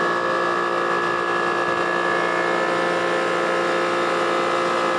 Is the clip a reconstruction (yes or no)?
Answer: no